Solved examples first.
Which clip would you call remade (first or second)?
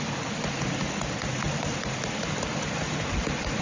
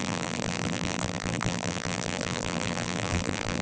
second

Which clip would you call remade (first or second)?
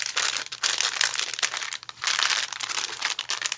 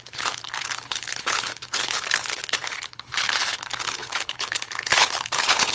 second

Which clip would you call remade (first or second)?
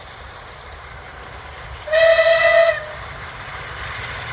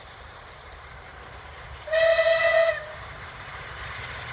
second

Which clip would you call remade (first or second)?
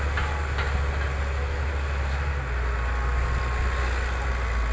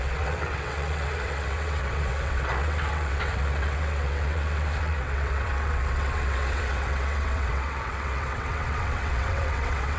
second